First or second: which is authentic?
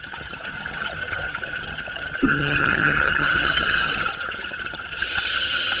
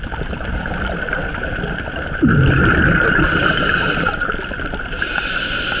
second